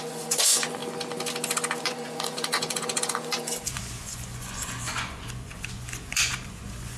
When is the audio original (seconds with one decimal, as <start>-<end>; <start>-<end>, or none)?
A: 0.8-1.8